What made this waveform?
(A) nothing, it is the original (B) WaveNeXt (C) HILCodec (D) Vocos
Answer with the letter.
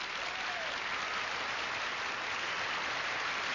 A